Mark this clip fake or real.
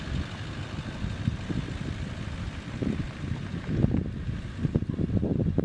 fake